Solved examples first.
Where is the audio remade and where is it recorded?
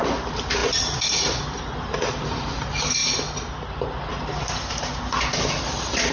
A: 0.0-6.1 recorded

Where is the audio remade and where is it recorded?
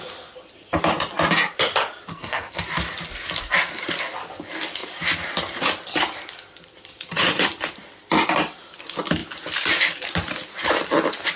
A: 0.0-2.1 recorded; 2.1-2.6 remade; 2.6-11.4 recorded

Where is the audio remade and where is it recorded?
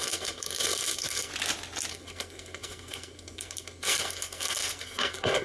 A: 0.0-1.3 remade; 1.3-1.9 recorded; 1.9-5.4 remade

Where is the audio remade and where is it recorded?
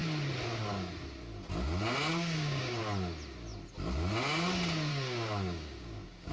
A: 0.0-2.1 recorded; 2.1-2.8 remade; 2.8-4.9 recorded; 4.9-6.3 remade